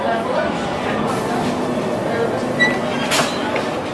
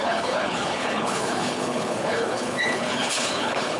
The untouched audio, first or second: first